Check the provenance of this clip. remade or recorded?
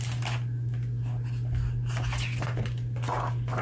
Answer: recorded